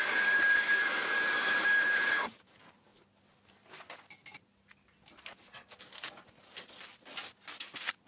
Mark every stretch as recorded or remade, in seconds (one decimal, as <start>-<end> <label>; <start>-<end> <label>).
0.0-2.9 remade; 2.9-7.6 recorded; 7.6-8.1 remade